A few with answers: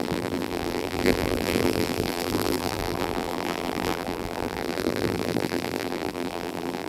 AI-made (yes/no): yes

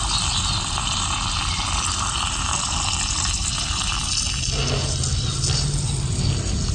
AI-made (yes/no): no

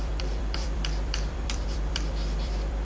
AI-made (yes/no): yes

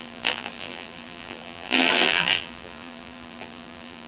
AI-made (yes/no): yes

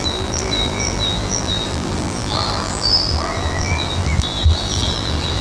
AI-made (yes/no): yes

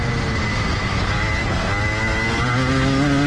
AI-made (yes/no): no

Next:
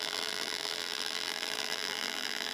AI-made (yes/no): yes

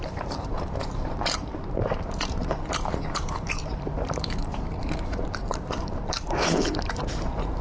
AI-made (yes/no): yes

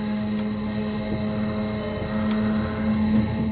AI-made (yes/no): no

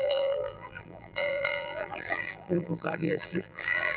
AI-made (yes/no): yes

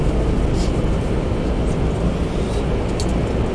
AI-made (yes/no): no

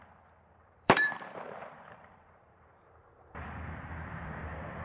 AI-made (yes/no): yes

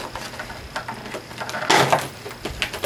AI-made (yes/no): no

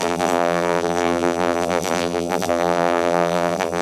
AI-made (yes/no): yes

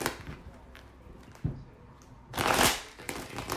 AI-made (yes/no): no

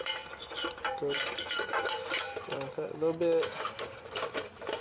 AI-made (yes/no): yes